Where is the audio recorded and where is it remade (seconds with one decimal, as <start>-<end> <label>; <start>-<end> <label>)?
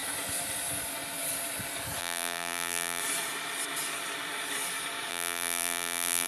0.0-2.0 recorded; 2.0-3.0 remade; 3.0-5.1 recorded; 5.1-6.3 remade